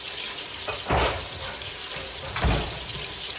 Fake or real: real